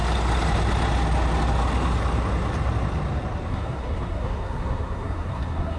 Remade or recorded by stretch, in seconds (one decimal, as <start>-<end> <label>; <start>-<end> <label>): 0.0-3.5 recorded; 3.5-5.8 remade